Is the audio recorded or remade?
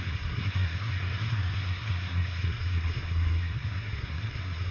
remade